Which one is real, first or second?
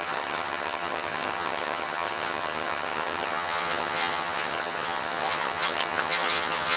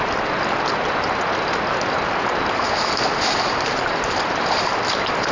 second